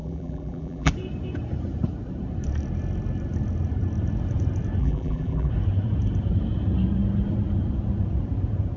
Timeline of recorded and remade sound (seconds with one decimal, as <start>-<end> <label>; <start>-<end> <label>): 0.0-0.9 remade; 0.9-4.8 recorded; 4.8-5.5 remade; 5.5-8.8 recorded